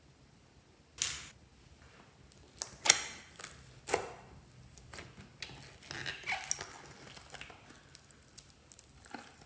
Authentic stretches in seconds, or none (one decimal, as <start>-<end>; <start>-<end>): 0.0-9.5